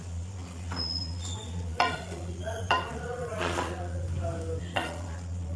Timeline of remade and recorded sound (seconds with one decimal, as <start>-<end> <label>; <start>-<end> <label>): 0.0-4.0 remade; 4.0-4.6 recorded; 4.6-5.6 remade